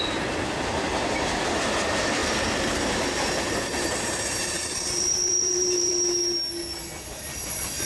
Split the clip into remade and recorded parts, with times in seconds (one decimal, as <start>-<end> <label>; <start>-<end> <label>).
0.0-2.2 recorded; 2.2-6.0 remade; 6.0-7.9 recorded